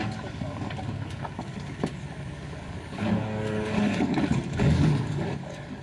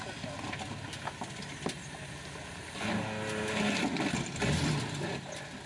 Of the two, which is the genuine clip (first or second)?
second